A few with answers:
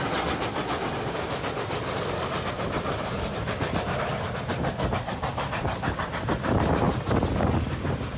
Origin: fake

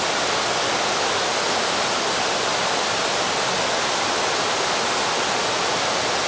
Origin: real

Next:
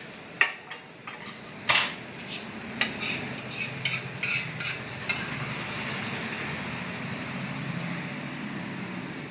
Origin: real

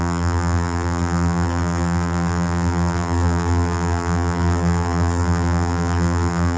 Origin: fake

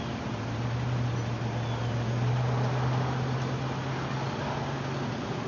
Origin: real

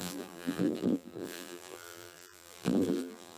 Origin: fake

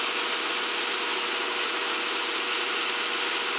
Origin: real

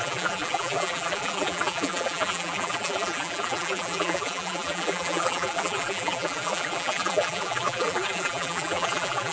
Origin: fake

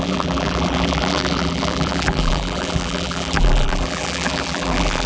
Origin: fake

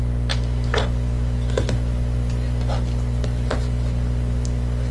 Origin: real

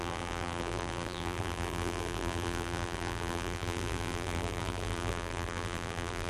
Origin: fake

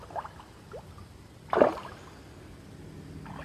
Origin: real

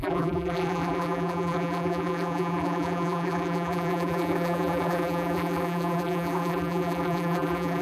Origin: fake